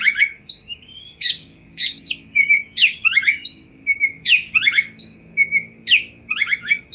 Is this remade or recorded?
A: remade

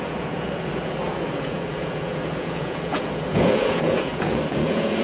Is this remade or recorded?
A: remade